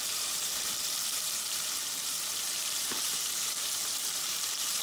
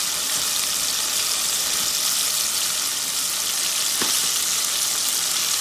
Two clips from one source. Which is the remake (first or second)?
first